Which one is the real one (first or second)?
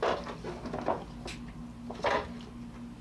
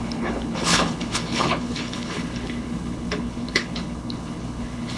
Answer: first